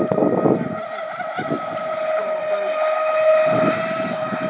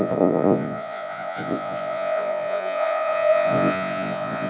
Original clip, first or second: first